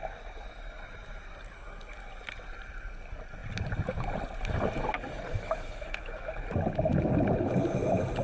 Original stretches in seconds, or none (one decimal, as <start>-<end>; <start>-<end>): 0.0-5.3; 6.3-8.2